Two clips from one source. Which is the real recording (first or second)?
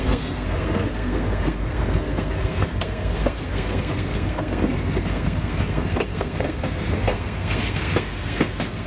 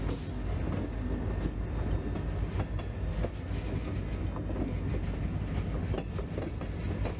second